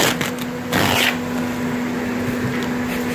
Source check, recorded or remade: recorded